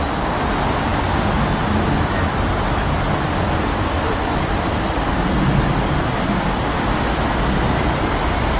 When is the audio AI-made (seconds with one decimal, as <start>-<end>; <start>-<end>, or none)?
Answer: none